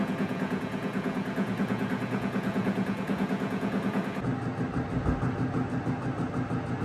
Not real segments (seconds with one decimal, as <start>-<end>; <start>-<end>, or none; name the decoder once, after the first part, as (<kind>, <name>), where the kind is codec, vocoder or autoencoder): 0.0-4.3 (vocoder, Vocos)